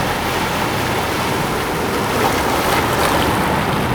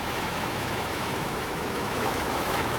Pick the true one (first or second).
first